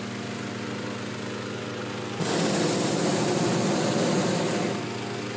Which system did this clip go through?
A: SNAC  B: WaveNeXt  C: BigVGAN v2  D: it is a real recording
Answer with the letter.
D